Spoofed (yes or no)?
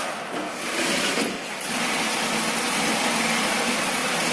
no